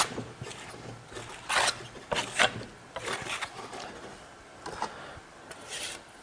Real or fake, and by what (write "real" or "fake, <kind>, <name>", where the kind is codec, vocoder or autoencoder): real